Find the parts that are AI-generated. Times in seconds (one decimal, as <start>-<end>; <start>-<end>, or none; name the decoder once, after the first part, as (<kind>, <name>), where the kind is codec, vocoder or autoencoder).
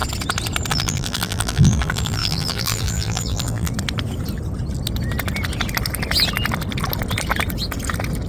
0.7-3.7 (vocoder, BigVGAN v2)